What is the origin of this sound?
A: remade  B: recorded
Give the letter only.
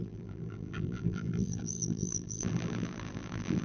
A